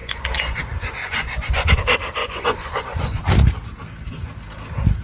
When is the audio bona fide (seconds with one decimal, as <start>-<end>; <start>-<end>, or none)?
0.6-1.0; 1.8-2.2; 3.2-5.0